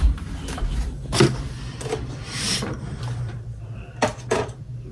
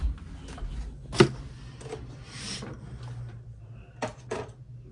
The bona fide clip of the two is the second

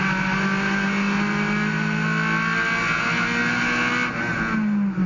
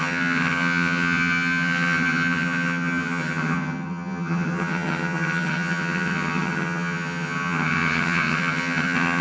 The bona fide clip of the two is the first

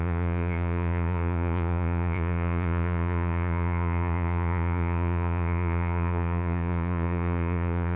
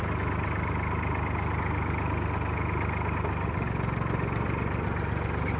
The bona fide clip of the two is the second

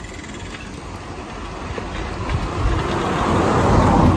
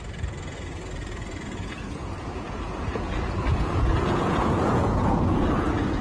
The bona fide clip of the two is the first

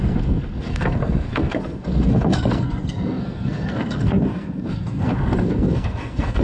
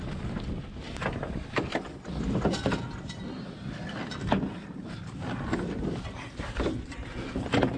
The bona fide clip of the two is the second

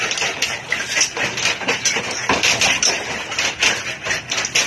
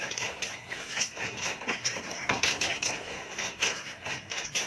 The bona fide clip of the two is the first